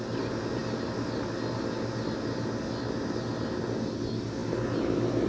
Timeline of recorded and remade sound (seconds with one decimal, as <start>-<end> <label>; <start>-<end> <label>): 0.0-5.3 recorded